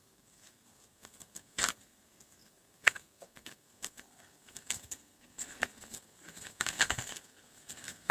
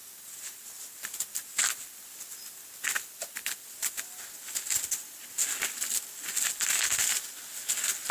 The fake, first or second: first